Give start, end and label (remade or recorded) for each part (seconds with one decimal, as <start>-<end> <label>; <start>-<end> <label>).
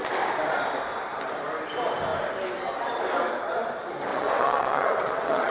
0.0-4.1 recorded; 4.1-5.5 remade